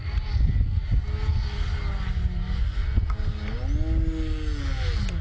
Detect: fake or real real